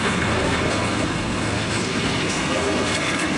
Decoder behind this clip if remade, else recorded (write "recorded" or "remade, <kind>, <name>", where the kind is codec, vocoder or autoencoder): remade, codec, SNAC